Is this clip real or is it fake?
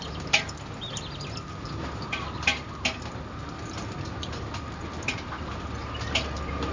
real